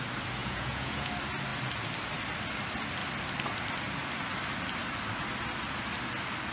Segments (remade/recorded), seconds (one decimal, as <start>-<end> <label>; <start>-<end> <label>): 0.0-0.4 recorded; 0.4-1.1 remade; 1.1-6.5 recorded